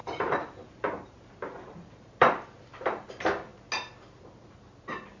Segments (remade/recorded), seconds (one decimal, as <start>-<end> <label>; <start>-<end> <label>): 0.0-3.1 remade; 3.1-5.2 recorded